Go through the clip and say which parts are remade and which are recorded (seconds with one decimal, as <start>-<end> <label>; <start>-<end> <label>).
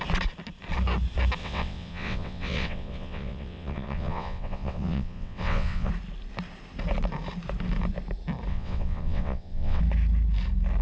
0.0-1.4 recorded; 1.4-5.9 remade; 5.9-8.5 recorded; 8.5-9.8 remade; 9.8-10.8 recorded